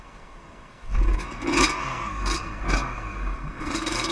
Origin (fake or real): fake